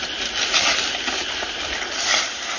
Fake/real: real